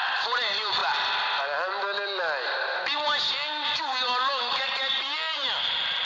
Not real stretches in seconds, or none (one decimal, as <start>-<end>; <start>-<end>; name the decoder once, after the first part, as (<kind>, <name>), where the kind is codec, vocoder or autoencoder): 0.0-0.8 (vocoder, BigVGAN v2); 4.4-6.0